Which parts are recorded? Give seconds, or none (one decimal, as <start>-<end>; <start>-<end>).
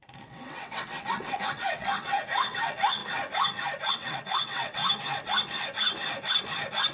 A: 3.0-3.9; 4.8-6.9